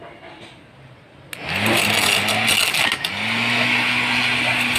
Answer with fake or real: real